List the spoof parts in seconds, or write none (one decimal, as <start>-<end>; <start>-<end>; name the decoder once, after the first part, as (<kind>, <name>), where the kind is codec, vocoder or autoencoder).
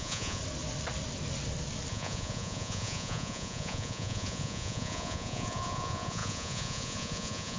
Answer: 0.0-0.4 (vocoder, Vocos); 1.9-7.6